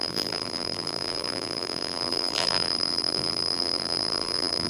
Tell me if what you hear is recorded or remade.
remade